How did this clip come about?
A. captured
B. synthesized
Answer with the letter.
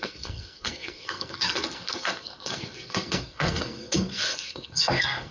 B